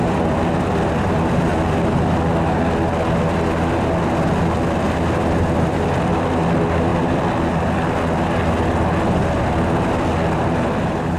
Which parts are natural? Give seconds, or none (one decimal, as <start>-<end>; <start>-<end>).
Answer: 1.5-5.4; 6.9-10.3

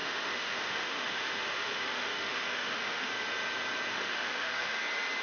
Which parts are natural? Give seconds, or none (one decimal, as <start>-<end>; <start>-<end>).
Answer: 3.1-3.9; 4.8-5.2

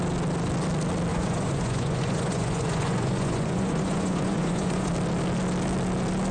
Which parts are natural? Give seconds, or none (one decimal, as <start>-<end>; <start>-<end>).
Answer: 0.0-1.1; 4.9-6.3